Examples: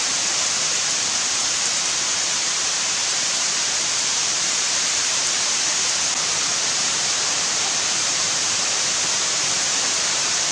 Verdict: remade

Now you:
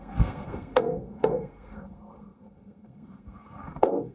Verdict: remade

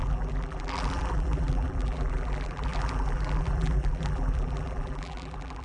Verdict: remade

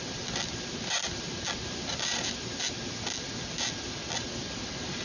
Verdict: recorded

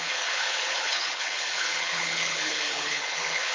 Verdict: remade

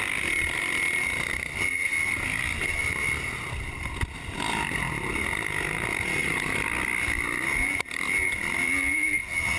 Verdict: recorded